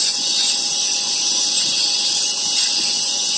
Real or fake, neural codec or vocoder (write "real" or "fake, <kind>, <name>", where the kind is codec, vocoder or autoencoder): fake, vocoder, Vocos